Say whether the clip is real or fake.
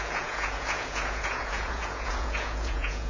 fake